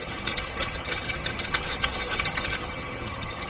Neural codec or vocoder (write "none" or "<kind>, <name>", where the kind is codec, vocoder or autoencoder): vocoder, HiFi-GAN